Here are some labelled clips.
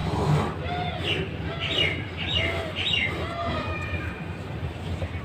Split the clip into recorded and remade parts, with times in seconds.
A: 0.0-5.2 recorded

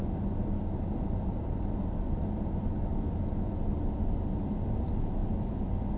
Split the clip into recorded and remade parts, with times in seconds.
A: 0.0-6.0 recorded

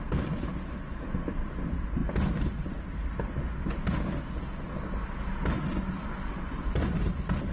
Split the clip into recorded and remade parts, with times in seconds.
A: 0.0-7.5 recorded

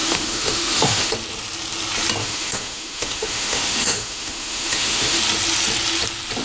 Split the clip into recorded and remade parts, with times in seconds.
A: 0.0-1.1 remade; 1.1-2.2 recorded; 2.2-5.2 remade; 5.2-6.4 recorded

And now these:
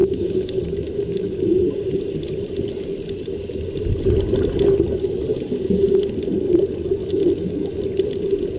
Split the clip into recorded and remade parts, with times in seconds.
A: 0.0-1.4 remade; 1.4-7.0 recorded; 7.0-7.8 remade; 7.8-8.6 recorded

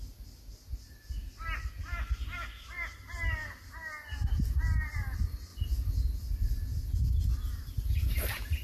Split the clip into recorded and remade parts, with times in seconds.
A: 0.0-8.6 recorded

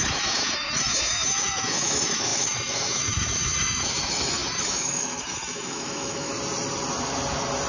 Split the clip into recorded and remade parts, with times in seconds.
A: 0.0-6.3 remade; 6.3-7.7 recorded